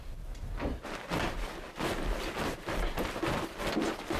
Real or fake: real